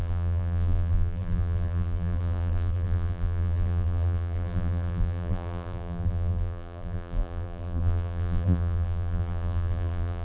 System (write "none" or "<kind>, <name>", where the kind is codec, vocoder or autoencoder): vocoder, BigVGAN v2